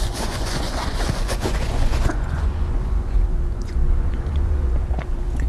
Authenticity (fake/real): fake